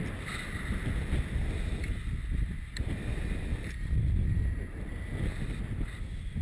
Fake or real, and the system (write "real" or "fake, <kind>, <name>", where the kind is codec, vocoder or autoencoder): real